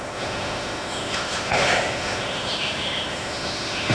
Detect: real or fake fake